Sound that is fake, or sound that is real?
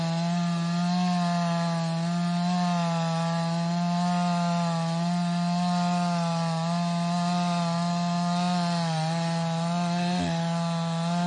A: real